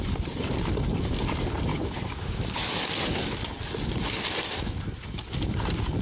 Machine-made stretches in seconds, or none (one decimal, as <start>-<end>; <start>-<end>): 1.7-2.7

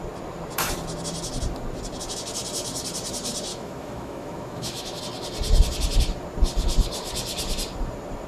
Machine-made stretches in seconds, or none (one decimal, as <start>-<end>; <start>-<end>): 3.5-5.0